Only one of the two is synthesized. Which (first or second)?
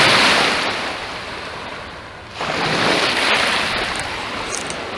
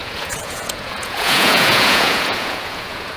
second